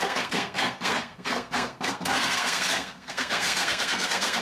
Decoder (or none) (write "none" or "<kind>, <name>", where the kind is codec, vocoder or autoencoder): codec, SNAC